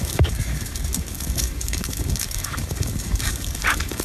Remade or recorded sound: remade